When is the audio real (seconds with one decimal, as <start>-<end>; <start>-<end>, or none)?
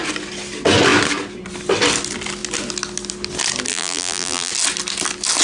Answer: 0.0-3.7; 4.5-5.4